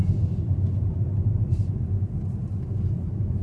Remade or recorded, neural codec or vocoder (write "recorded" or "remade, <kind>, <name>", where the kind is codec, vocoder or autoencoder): recorded